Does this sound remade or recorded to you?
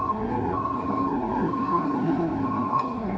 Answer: remade